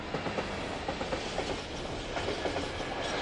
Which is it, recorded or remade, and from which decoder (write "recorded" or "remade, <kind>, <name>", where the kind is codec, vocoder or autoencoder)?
recorded